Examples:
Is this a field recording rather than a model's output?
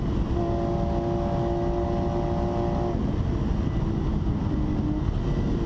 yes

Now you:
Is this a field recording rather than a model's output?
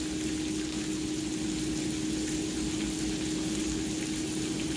yes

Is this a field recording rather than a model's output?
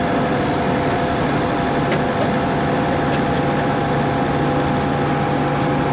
yes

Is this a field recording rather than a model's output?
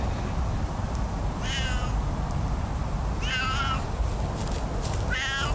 yes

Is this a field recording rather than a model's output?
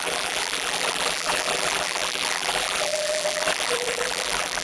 no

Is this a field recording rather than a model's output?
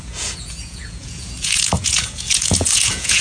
no